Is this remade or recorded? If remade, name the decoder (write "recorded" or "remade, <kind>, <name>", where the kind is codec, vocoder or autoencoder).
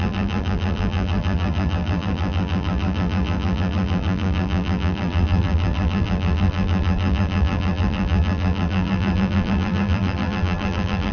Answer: remade, vocoder, BigVGAN v2